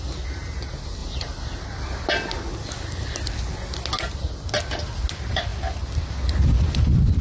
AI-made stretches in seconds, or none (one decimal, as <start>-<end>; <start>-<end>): none